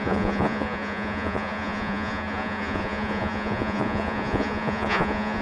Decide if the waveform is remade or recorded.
remade